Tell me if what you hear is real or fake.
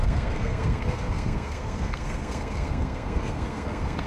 fake